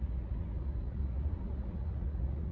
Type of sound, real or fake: fake